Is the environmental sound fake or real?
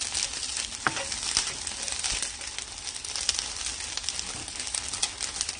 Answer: real